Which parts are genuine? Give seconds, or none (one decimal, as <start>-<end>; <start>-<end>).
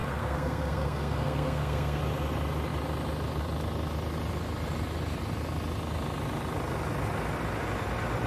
2.0-8.3